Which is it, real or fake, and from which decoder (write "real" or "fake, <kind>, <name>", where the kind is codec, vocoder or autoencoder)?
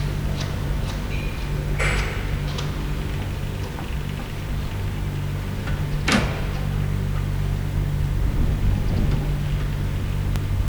real